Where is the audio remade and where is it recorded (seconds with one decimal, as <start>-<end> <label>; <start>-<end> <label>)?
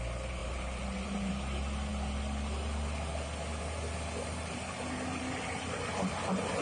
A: 0.0-0.4 recorded; 0.4-1.3 remade; 1.3-6.6 recorded